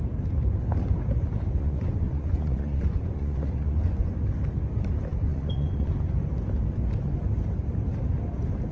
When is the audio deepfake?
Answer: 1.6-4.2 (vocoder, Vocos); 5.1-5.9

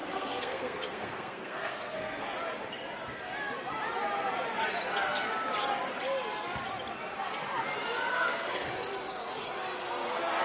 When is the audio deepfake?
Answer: 0.0-2.2 (codec, SNAC); 8.1-8.7

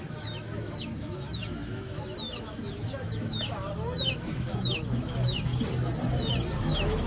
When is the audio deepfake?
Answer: 0.0-5.5 (autoencoder, DAC-VAE); 6.6-7.1

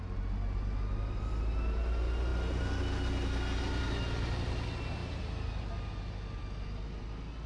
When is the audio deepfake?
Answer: none

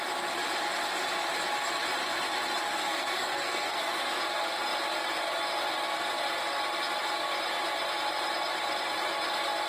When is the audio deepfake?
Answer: 2.8-4.1 (codec, SNAC)